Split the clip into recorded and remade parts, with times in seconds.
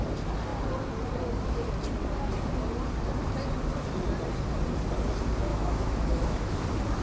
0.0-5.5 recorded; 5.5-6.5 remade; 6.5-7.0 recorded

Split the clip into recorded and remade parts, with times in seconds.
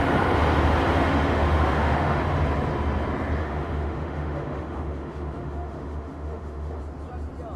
0.0-1.0 recorded; 1.0-2.2 remade; 2.2-3.4 recorded; 3.4-6.8 remade; 6.8-7.6 recorded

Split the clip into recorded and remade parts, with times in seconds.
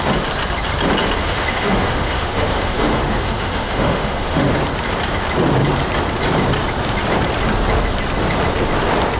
0.0-1.2 recorded; 1.2-4.5 remade; 4.5-9.2 recorded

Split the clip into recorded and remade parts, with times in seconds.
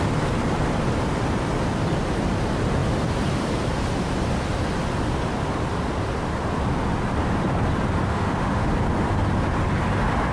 0.0-8.1 recorded; 8.1-8.7 remade; 8.7-10.3 recorded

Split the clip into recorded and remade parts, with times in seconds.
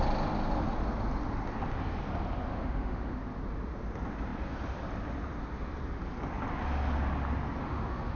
0.0-2.5 recorded; 2.5-3.1 remade; 3.1-7.6 recorded; 7.6-8.2 remade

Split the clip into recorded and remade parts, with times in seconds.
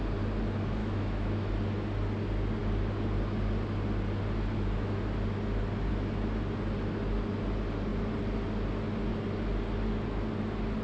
0.0-0.8 recorded; 0.8-1.5 remade; 1.5-10.8 recorded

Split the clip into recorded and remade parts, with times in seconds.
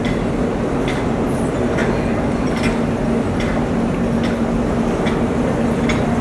0.0-6.2 recorded